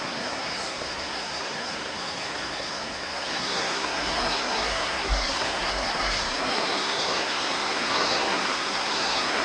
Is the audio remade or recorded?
remade